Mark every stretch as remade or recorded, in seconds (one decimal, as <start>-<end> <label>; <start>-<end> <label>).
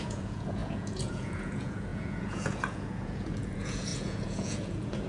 0.0-5.1 remade